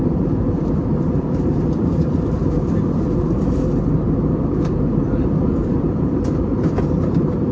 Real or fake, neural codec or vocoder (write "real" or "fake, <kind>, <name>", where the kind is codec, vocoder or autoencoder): fake, vocoder, BigVGAN v2